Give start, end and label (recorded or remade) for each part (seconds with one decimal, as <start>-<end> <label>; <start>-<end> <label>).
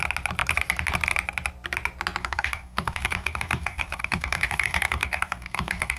0.0-2.2 recorded; 2.2-6.0 remade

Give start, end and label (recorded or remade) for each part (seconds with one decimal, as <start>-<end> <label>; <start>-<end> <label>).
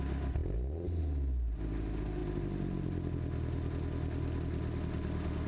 0.0-5.5 recorded